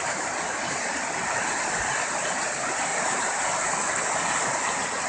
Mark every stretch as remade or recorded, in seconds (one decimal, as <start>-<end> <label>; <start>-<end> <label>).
0.0-5.1 recorded